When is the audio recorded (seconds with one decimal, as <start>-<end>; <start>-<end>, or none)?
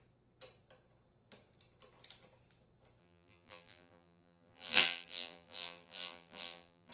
0.0-3.0